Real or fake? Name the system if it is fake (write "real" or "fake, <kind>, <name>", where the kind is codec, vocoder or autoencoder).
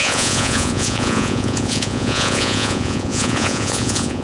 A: fake, vocoder, Vocos